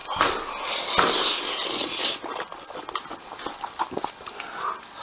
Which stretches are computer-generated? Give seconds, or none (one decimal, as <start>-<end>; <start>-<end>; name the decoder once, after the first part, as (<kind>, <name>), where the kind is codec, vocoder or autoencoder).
none